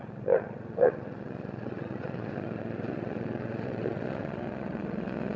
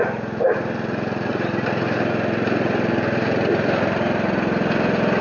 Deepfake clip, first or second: first